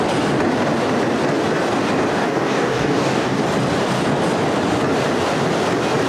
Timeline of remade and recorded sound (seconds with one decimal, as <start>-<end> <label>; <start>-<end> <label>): 0.0-2.1 recorded; 2.1-3.4 remade; 3.4-6.1 recorded